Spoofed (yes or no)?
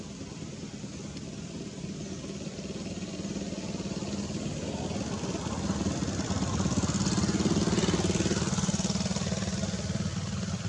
no